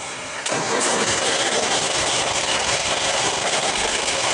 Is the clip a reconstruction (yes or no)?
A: yes